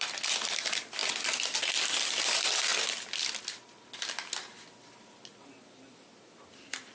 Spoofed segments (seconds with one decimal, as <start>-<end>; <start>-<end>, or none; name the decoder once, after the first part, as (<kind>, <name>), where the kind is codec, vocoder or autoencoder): none

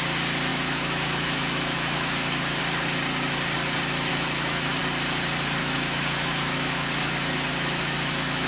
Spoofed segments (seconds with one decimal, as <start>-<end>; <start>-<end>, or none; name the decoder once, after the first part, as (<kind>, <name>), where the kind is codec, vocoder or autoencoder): 0.5-2.6 (autoencoder, DAC-VAE); 4.1-4.8; 5.6-8.5